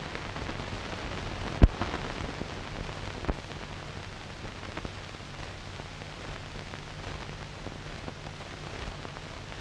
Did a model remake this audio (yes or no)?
no